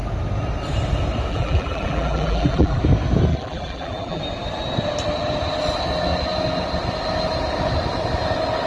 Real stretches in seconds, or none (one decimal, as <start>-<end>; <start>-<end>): 0.0-1.3; 2.8-3.3; 4.2-8.7